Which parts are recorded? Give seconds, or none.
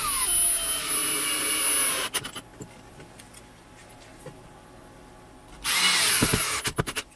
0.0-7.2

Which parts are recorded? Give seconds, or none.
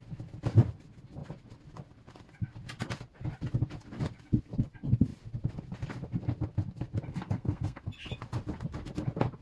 0.0-7.1; 7.8-9.4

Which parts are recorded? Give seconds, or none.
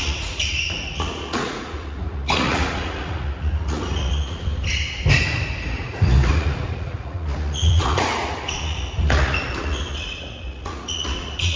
4.5-5.7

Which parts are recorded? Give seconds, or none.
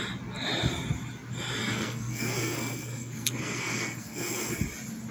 0.0-1.6; 4.6-5.1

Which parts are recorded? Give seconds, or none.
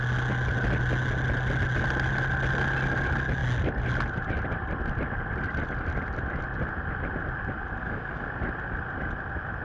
0.0-7.8; 8.3-9.6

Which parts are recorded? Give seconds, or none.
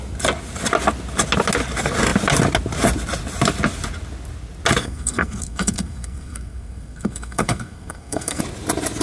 0.0-4.8; 8.4-9.0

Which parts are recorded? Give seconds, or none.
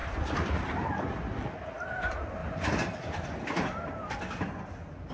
1.0-2.4; 4.1-5.1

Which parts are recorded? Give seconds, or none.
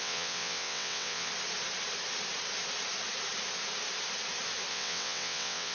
1.3-4.7